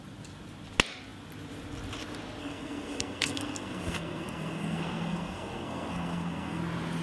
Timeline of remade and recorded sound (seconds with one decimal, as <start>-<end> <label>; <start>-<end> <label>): 0.0-2.4 recorded; 2.4-6.6 remade; 6.6-7.0 recorded